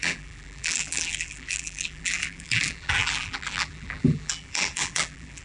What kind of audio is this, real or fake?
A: fake